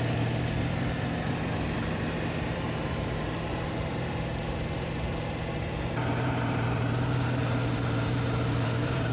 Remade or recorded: remade